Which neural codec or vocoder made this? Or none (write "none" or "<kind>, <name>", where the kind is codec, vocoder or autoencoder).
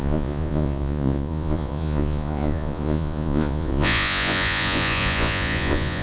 vocoder, Vocos